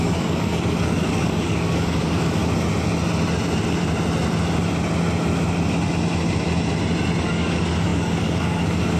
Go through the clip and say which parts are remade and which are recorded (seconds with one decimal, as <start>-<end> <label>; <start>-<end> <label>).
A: 0.0-2.4 remade; 2.4-7.2 recorded; 7.2-9.0 remade